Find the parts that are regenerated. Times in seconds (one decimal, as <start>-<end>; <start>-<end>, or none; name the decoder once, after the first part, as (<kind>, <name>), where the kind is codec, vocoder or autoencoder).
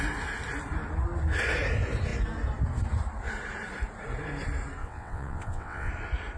4.8-5.9 (vocoder, WaveNeXt)